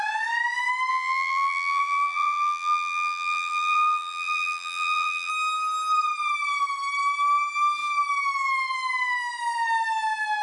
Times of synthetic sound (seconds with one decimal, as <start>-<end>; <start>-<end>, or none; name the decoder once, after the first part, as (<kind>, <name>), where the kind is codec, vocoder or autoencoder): 0.9-5.3 (vocoder, BigVGAN v2)